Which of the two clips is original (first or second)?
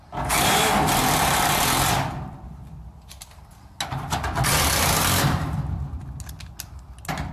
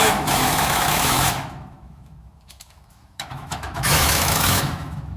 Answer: first